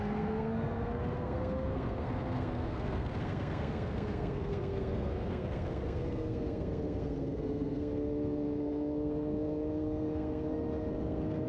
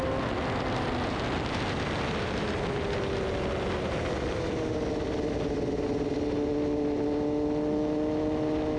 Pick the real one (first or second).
second